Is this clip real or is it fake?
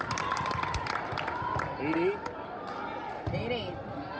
real